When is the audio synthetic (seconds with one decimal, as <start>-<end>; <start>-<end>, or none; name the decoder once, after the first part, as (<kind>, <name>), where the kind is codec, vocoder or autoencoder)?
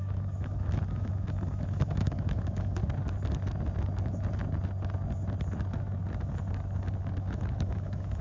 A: 0.0-2.8 (autoencoder, DAC-VAE); 7.2-8.2